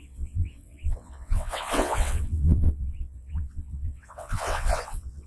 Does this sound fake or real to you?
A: fake